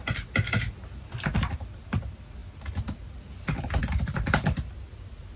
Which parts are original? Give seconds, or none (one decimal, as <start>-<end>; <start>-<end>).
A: 0.0-5.4